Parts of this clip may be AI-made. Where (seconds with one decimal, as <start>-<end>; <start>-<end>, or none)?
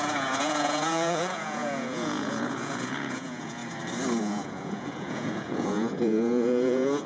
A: 0.0-3.6; 4.2-7.1